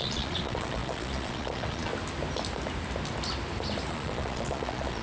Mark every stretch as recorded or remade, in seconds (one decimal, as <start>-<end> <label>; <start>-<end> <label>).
0.0-1.9 remade; 1.9-3.9 recorded; 3.9-5.0 remade